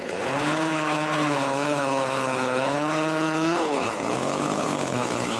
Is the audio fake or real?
fake